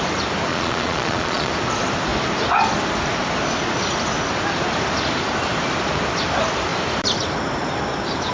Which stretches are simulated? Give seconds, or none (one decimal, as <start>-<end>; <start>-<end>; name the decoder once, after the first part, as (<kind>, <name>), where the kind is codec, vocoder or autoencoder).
0.5-1.5 (vocoder, Vocos)